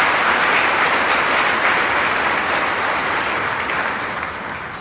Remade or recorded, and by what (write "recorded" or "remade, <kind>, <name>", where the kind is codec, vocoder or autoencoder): recorded